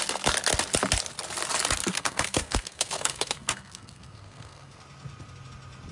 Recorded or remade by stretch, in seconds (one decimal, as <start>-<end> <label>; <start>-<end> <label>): 0.0-1.9 recorded; 1.9-4.8 remade; 4.8-5.9 recorded